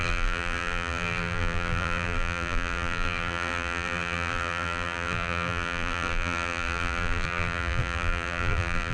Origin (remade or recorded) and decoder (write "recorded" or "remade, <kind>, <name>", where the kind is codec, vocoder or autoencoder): remade, vocoder, BigVGAN v2